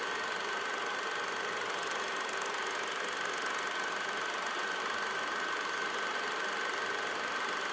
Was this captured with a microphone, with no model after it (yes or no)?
yes